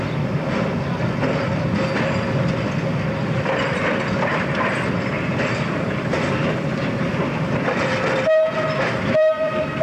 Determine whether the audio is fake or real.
fake